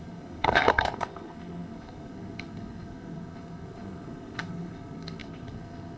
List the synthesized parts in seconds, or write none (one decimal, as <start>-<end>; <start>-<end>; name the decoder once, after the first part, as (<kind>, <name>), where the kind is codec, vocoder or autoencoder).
0.0-6.0 (codec, SNAC)